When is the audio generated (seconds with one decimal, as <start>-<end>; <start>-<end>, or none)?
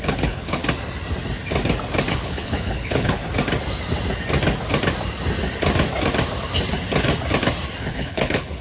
0.0-0.6; 2.1-3.2; 7.8-8.6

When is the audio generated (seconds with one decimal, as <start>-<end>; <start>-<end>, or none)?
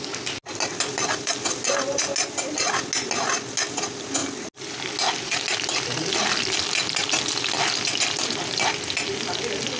none